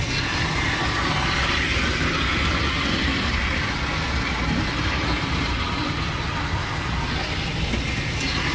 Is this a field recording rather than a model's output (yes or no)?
yes